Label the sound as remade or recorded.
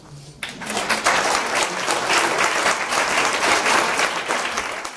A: recorded